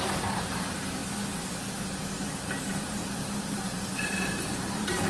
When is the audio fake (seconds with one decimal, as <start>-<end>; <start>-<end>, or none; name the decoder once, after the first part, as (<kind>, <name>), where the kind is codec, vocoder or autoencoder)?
0.0-1.0 (vocoder, BigVGAN v2); 2.6-5.1